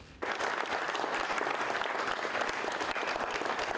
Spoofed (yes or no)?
no